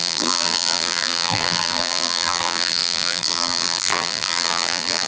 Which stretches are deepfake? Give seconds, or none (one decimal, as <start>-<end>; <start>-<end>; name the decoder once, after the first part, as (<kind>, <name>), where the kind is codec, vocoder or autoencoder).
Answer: 0.0-5.1 (vocoder, BigVGAN v2)